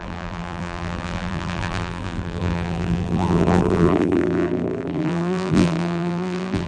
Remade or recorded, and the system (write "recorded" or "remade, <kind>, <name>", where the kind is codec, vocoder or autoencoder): remade, vocoder, BigVGAN v2